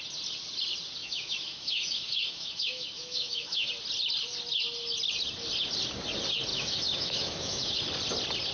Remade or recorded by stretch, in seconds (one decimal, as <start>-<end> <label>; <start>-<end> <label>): 0.0-1.0 recorded; 1.0-3.7 remade; 3.7-6.5 recorded; 6.5-7.8 remade; 7.8-8.5 recorded